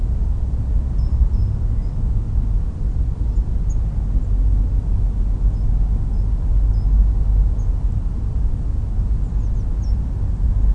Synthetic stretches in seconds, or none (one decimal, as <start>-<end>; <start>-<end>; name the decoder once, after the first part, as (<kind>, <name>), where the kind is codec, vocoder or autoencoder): none